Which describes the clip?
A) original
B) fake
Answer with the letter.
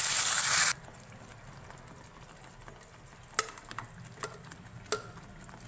A